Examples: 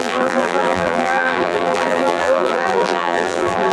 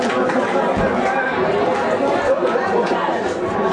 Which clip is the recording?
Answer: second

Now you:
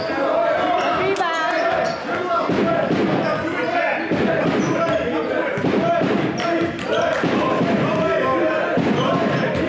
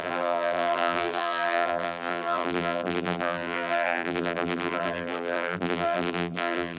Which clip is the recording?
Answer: first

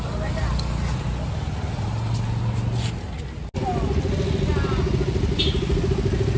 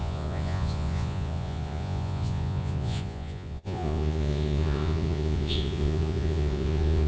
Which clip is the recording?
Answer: first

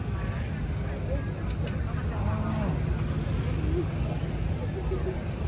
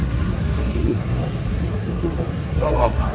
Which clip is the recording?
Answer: first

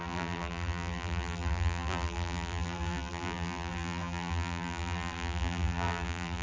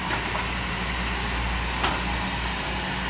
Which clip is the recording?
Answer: second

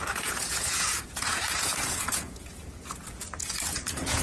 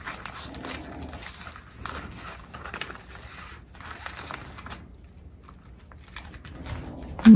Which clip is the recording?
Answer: second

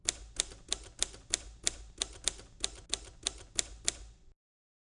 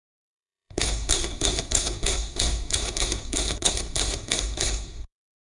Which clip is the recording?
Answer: first